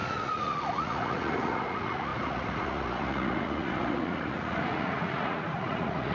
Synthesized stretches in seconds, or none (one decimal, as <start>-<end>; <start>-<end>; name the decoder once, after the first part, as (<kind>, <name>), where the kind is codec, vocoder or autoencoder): 0.0-6.1 (vocoder, Vocos)